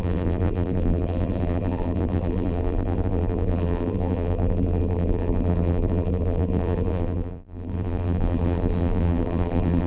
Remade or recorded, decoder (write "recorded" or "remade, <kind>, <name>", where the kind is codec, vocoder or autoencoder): remade, vocoder, BigVGAN v2